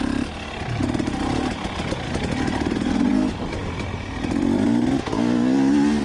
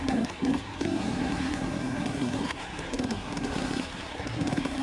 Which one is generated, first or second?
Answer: second